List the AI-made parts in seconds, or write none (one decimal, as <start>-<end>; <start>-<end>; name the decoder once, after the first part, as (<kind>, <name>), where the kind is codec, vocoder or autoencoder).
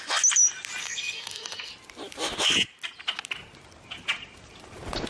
0.8-1.7 (codec, SNAC)